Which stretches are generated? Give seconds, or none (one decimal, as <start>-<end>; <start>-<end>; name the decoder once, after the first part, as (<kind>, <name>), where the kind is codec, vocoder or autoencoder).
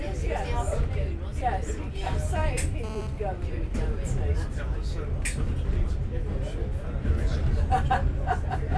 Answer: 1.3-1.9 (vocoder, BigVGAN v2); 2.4-4.9